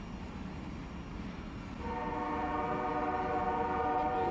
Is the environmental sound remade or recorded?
recorded